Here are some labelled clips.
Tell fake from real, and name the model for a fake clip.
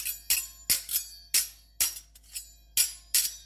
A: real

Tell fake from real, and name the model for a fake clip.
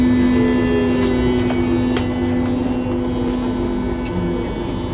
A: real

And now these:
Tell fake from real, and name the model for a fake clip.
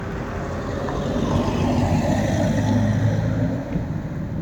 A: real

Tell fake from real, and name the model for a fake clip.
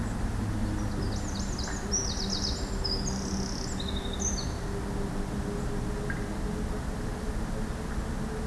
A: real